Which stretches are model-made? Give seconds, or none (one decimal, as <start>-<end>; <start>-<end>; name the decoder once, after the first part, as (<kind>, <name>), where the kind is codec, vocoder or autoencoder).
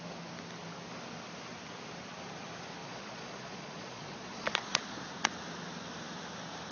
2.8-5.1 (vocoder, Vocos)